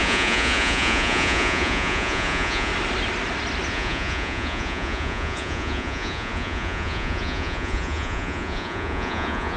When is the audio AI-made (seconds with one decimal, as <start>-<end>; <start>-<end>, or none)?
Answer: 0.0-2.7; 3.7-9.6